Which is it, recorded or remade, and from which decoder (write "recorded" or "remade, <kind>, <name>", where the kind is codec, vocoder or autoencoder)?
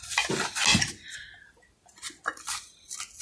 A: recorded